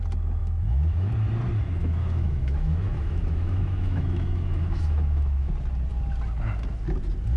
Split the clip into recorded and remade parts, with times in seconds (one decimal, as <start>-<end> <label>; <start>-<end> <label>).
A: 0.0-0.4 recorded; 0.4-1.1 remade; 1.1-1.8 recorded; 1.8-5.5 remade; 5.5-7.4 recorded